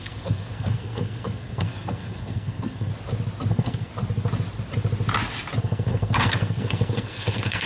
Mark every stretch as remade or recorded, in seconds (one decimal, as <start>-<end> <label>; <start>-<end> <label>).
0.0-2.9 remade; 2.9-3.5 recorded; 3.5-3.9 remade; 3.9-5.6 recorded; 5.6-7.7 remade